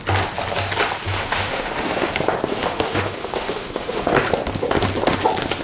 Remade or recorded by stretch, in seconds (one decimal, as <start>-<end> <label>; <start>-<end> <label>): 0.0-1.2 recorded; 1.2-2.1 remade; 2.1-2.5 recorded; 2.5-4.1 remade; 4.1-5.6 recorded